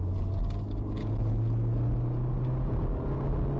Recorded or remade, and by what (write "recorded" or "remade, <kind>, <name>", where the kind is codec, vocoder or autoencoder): recorded